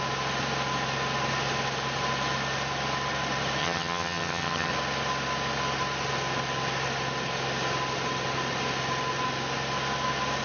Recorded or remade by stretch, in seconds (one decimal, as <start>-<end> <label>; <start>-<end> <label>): 0.0-3.6 recorded; 3.6-4.7 remade; 4.7-10.4 recorded